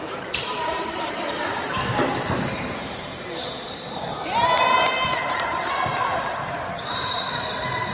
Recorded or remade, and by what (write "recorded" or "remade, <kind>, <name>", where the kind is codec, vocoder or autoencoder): remade, vocoder, BigVGAN v2